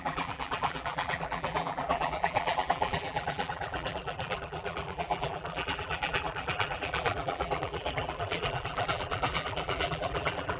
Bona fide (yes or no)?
no